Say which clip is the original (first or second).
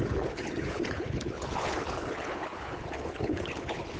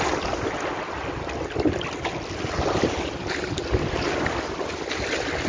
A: second